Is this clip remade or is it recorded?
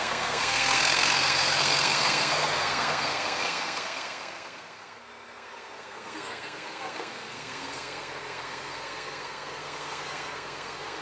remade